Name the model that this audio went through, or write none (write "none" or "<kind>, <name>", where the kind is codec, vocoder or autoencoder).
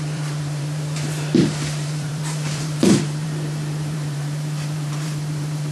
vocoder, BigVGAN v2